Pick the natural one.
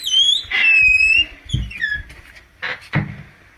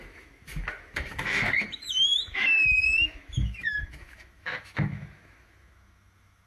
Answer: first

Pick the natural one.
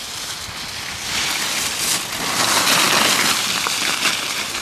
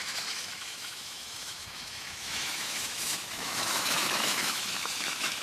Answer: first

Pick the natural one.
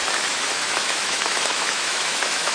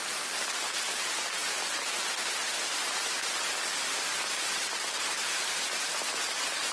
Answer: second